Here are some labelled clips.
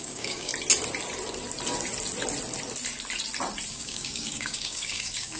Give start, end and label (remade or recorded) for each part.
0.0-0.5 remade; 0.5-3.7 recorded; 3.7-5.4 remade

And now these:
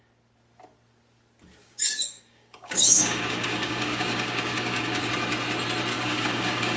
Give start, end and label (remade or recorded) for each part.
0.0-1.6 recorded; 1.6-5.1 remade; 5.1-5.9 recorded; 5.9-6.8 remade